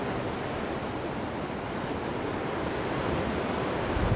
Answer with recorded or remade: recorded